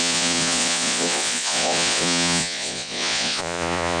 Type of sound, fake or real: fake